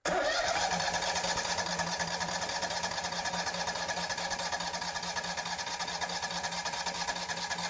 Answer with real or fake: real